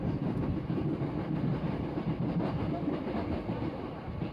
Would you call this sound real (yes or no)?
yes